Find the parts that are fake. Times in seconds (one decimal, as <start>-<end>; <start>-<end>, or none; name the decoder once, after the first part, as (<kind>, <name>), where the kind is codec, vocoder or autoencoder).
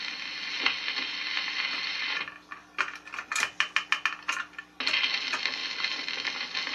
none